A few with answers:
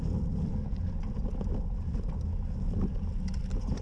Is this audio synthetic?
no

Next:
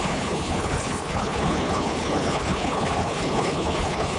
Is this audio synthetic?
yes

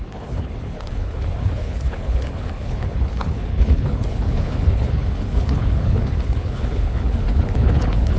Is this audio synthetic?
yes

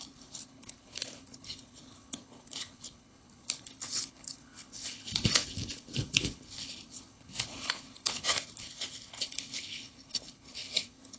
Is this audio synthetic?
yes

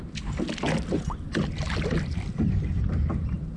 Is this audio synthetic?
no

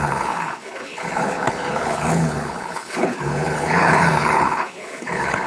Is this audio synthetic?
yes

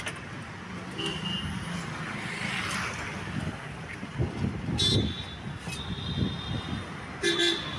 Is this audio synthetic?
no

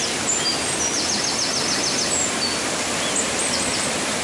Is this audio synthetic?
no